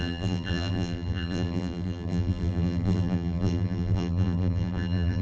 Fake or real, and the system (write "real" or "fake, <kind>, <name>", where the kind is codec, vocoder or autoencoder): fake, vocoder, BigVGAN v2